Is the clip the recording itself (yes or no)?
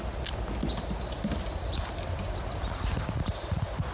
yes